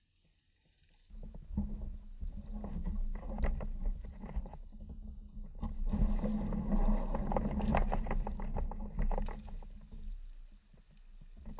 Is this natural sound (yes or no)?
yes